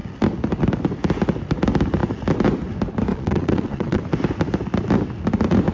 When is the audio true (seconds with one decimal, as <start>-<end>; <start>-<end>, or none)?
0.0-3.1; 4.0-5.7

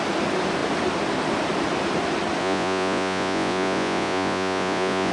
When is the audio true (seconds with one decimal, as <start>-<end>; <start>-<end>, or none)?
0.0-2.4

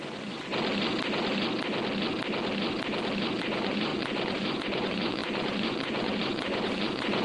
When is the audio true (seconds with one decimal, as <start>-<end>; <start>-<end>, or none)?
0.5-3.4

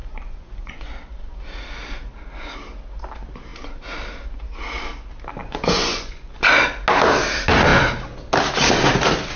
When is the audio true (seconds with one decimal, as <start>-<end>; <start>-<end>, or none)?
0.9-5.4; 6.3-9.4

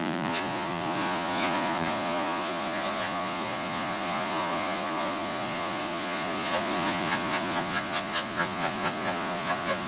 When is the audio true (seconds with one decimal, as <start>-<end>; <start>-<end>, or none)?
none

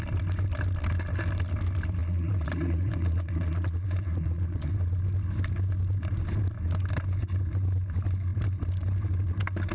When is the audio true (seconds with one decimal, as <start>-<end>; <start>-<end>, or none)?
0.0-2.0; 4.7-9.7